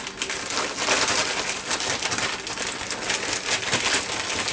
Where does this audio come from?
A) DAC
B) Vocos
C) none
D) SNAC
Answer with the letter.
C